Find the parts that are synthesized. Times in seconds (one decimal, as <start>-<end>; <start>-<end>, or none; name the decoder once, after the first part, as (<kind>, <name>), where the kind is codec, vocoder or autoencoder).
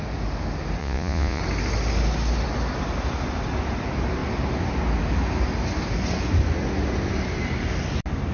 0.8-1.4 (vocoder, Vocos)